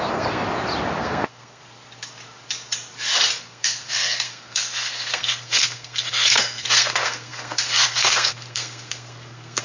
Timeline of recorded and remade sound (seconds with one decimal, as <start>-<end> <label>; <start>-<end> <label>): 0.0-0.4 remade; 0.4-1.0 recorded; 1.0-1.6 remade; 1.6-3.4 recorded; 3.4-9.6 remade